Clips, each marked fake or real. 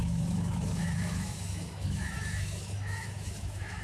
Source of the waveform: fake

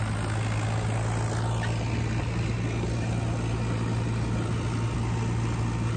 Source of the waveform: real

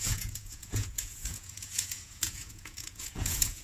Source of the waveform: fake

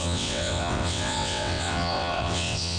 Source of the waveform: fake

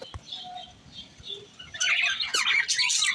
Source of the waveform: real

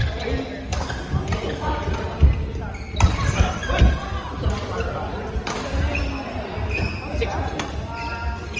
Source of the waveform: real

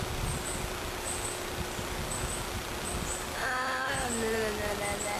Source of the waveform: real